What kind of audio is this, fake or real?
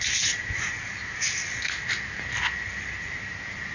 real